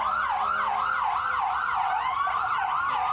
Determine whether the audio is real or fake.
real